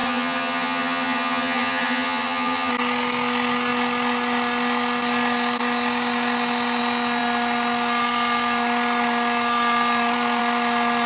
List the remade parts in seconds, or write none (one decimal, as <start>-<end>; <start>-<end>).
0.0-2.7